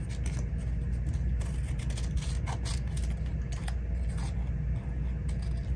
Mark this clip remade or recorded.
recorded